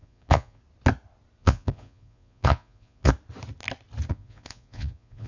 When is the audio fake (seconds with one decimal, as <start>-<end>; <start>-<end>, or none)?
0.0-0.6; 1.4-3.1; 4.1-5.3